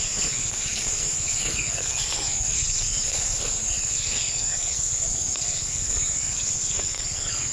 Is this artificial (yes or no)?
yes